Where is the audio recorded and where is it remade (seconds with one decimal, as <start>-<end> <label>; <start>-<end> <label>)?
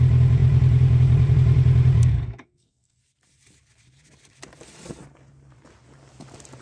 0.0-2.0 recorded; 2.0-3.0 remade; 3.0-6.6 recorded